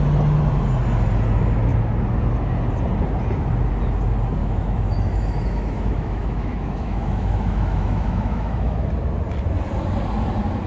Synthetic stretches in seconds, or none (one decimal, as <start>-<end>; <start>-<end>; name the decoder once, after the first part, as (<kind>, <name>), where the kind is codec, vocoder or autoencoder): 4.4-8.9 (autoencoder, DAC-VAE)